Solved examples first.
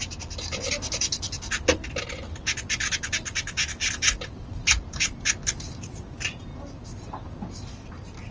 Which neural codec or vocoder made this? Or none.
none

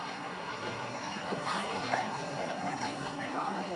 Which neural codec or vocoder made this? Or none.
codec, SNAC